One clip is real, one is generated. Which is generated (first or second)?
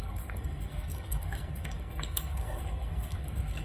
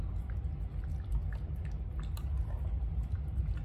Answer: first